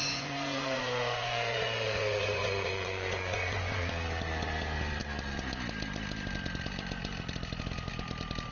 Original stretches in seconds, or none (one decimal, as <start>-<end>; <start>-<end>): 3.9-8.5